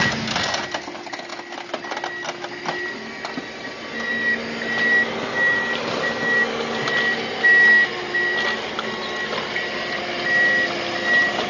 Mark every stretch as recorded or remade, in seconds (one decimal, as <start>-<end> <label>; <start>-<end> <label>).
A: 0.0-11.5 recorded